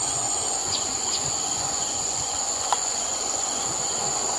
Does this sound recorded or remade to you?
remade